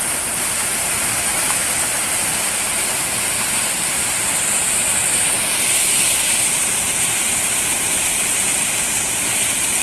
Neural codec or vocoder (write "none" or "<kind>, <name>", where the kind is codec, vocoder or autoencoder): none